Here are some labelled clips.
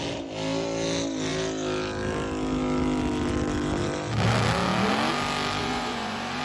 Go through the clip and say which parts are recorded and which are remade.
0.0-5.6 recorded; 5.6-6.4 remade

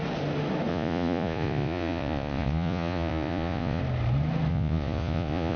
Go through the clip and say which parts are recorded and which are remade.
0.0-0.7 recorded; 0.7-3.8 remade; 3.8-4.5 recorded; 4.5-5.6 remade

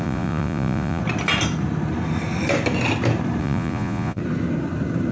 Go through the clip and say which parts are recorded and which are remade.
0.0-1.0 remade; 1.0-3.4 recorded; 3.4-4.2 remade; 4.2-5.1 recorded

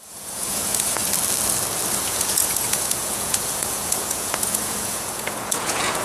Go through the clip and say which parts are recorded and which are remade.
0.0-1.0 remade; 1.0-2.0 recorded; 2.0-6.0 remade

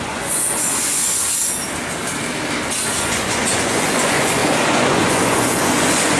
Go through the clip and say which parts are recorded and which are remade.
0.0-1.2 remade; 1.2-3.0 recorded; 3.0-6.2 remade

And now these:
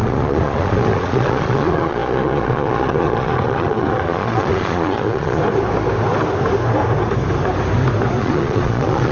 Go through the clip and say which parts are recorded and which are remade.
0.0-5.4 remade; 5.4-8.2 recorded; 8.2-9.1 remade

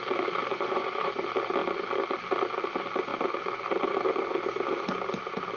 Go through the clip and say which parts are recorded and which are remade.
0.0-0.5 recorded; 0.5-1.1 remade; 1.1-5.6 recorded